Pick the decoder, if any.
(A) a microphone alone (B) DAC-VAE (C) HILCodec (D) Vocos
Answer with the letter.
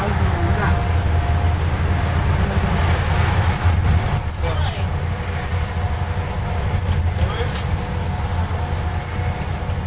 A